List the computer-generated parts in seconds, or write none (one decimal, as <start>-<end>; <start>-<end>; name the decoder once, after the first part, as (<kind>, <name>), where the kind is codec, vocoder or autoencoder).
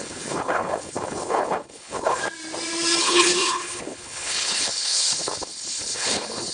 0.0-2.2 (codec, HILCodec); 3.0-6.5